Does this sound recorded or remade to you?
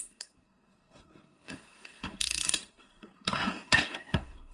remade